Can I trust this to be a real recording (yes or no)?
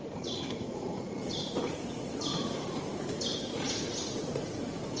no